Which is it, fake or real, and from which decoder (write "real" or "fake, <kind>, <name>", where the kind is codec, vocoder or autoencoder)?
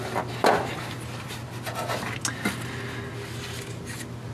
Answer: real